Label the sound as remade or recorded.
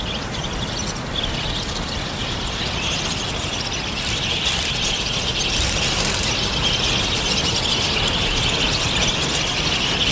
recorded